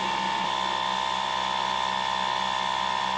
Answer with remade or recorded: recorded